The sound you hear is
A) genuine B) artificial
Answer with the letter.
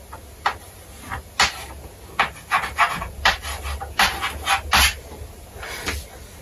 A